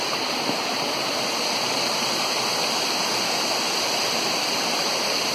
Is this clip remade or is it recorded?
recorded